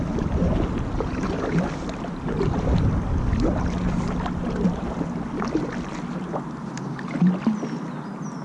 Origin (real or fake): real